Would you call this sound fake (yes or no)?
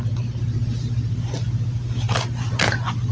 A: no